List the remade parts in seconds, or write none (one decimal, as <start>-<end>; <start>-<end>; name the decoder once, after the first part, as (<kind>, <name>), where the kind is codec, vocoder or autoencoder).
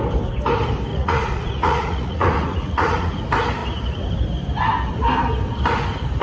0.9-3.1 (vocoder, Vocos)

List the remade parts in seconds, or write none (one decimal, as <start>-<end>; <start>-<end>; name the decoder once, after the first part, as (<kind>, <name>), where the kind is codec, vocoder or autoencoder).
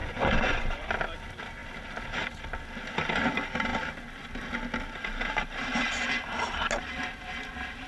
0.0-0.9 (vocoder, Vocos)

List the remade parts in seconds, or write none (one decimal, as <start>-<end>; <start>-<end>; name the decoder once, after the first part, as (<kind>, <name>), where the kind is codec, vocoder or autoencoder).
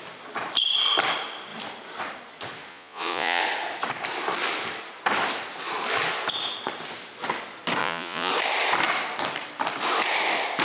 2.7-3.4 (vocoder, Vocos); 7.8-8.3